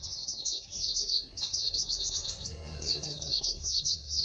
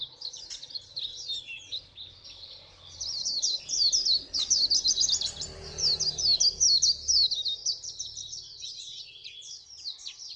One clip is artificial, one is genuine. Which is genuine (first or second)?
second